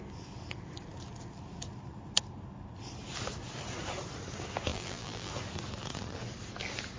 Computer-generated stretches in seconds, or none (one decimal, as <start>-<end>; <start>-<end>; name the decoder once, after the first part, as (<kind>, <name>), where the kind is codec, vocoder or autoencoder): 4.7-5.3 (vocoder, BigVGAN v2)